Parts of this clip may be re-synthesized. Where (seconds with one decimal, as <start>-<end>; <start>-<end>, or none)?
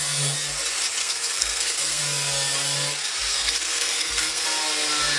1.0-2.0; 3.3-4.4